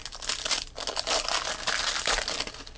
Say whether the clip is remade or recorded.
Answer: recorded